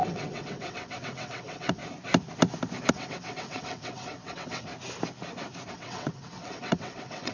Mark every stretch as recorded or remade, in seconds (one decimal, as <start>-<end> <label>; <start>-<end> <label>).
0.0-1.8 remade; 1.8-2.9 recorded; 2.9-4.7 remade; 4.7-5.7 recorded; 5.7-7.3 remade